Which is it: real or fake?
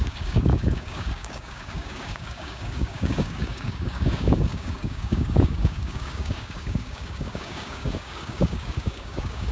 fake